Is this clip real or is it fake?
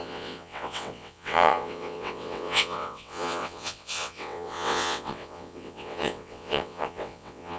fake